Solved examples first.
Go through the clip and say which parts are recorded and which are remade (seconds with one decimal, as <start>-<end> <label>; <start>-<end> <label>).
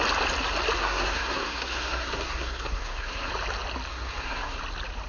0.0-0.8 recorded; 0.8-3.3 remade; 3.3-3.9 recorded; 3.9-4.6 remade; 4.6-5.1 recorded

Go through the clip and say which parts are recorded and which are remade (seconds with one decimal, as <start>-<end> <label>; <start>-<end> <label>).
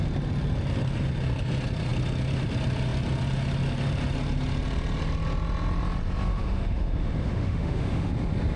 0.0-6.3 recorded; 6.3-8.1 remade; 8.1-8.6 recorded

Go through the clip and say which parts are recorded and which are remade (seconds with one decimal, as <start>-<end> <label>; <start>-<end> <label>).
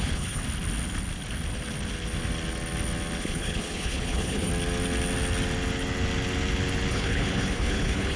0.0-0.4 remade; 0.4-3.2 recorded; 3.2-4.5 remade; 4.5-6.9 recorded; 6.9-8.2 remade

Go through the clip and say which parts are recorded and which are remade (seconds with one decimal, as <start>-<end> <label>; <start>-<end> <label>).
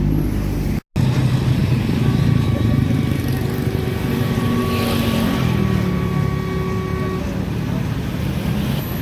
0.0-1.6 recorded; 1.6-4.6 remade; 4.6-9.0 recorded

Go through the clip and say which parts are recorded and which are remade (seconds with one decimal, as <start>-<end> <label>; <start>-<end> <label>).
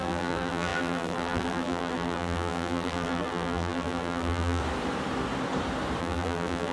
0.0-4.6 remade; 4.6-6.0 recorded; 6.0-6.7 remade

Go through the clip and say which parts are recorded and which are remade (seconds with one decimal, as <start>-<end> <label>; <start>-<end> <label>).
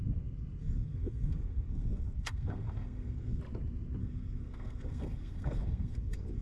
0.0-0.6 recorded; 0.6-3.4 remade; 3.4-4.0 recorded; 4.0-6.4 remade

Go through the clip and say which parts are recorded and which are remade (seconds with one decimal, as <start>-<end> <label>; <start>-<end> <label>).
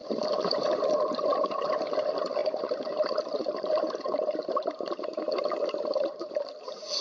0.0-7.0 remade